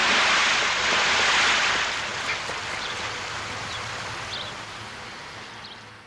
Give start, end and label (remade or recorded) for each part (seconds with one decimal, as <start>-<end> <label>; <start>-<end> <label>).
0.0-6.1 recorded